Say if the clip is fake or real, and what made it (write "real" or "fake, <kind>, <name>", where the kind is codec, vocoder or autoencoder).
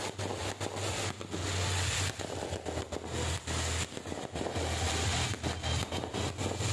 real